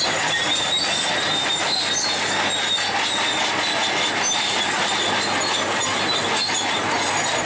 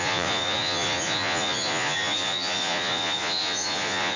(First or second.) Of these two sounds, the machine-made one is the second